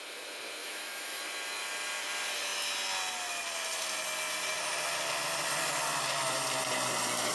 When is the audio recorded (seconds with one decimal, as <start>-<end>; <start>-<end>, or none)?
0.0-0.6; 1.2-7.3